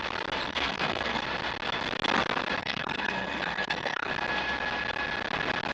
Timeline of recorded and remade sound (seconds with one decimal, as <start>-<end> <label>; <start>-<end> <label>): 0.0-0.5 recorded; 0.5-1.2 remade; 1.2-2.6 recorded; 2.6-4.1 remade; 4.1-5.7 recorded